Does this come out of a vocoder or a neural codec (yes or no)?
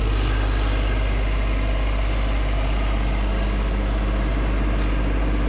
no